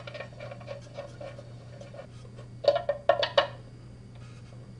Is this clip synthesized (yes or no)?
no